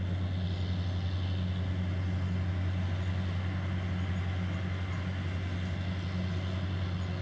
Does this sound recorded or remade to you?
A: recorded